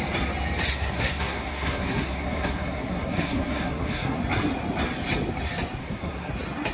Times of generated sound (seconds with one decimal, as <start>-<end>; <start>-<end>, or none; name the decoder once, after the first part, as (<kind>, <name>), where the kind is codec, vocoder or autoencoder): 0.7-4.2 (codec, SNAC); 5.8-6.3